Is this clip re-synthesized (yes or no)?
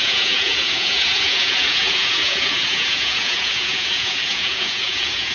yes